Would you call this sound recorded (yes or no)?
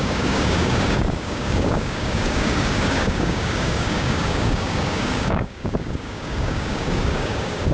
no